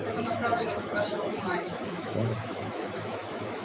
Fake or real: fake